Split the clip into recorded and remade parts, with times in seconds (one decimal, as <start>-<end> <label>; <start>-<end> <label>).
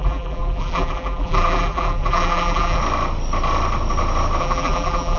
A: 0.0-2.8 remade; 2.8-4.4 recorded; 4.4-5.2 remade